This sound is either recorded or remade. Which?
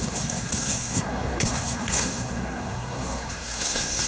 remade